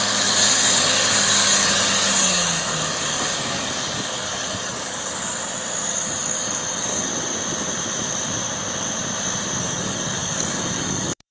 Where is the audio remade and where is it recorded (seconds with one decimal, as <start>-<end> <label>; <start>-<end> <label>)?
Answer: 0.0-5.4 remade; 5.4-5.9 recorded; 5.9-7.1 remade; 7.1-9.6 recorded; 9.6-11.3 remade